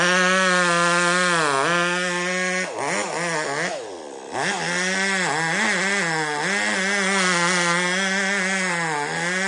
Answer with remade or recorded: recorded